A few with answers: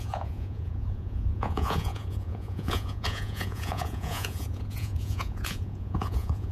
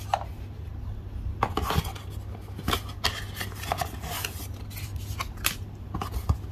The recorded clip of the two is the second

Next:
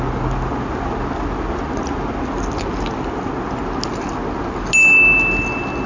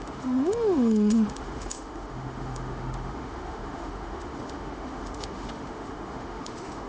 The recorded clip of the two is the first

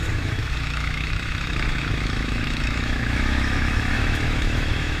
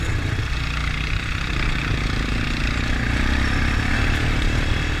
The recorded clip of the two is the second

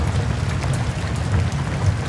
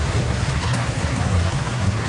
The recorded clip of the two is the first